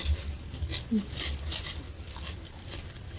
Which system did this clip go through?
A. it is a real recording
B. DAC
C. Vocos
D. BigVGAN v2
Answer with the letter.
A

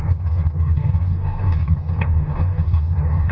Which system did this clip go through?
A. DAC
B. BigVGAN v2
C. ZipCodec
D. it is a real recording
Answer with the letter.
A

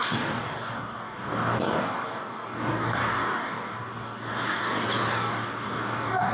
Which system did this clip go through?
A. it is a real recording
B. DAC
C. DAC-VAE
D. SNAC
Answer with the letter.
B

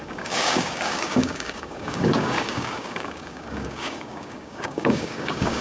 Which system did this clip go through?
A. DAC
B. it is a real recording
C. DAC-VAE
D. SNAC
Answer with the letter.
A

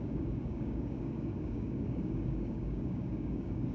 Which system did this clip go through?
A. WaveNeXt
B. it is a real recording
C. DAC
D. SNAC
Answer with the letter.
C